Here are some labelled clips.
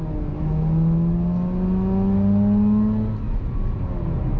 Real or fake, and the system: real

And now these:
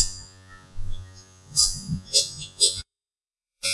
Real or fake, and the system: fake, vocoder, Vocos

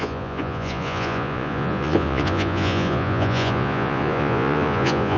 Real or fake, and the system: fake, vocoder, Vocos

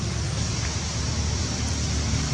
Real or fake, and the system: real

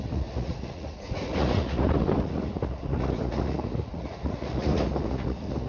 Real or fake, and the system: fake, vocoder, Vocos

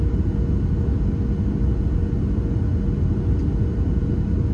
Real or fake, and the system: real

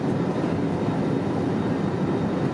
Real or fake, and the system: real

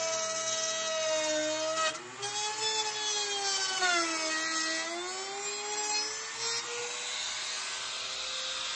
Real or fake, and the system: real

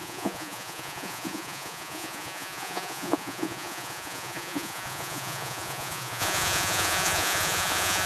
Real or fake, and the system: fake, vocoder, Vocos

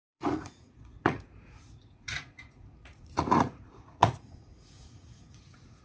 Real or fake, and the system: fake, vocoder, Vocos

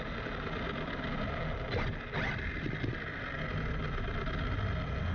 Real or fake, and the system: real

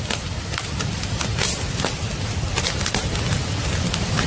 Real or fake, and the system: real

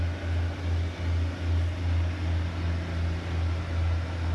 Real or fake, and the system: real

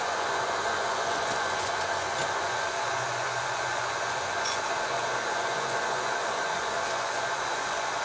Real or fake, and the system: fake, vocoder, Vocos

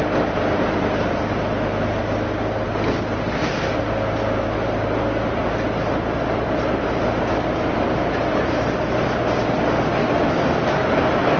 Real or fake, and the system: real